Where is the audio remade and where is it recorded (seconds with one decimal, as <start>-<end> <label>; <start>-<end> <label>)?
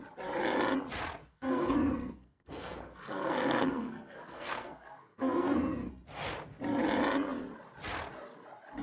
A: 0.0-1.2 recorded; 1.2-5.9 remade; 5.9-8.8 recorded